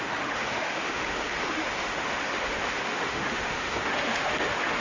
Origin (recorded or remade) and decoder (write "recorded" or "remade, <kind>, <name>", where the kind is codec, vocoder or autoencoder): remade, autoencoder, DAC-VAE